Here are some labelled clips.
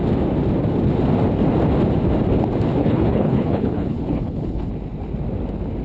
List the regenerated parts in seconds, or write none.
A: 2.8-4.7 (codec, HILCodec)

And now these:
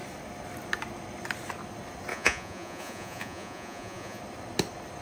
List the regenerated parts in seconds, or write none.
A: 2.1-4.2 (vocoder, Vocos)

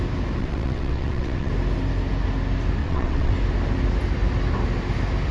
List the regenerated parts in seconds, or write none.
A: 0.4-1.5 (vocoder, WaveNeXt); 2.8-3.3

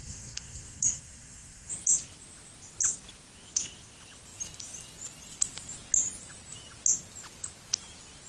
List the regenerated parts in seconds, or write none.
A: 0.0-1.7 (codec, SNAC)

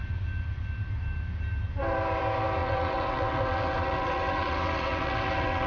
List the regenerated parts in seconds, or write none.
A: 2.6-5.7 (vocoder, WaveNeXt)

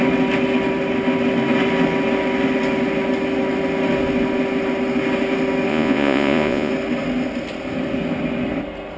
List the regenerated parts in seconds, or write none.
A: 5.7-6.7 (vocoder, Vocos)